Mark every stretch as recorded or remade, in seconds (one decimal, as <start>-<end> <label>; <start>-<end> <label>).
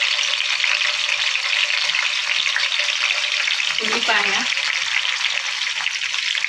0.0-3.8 recorded; 3.8-4.7 remade; 4.7-6.5 recorded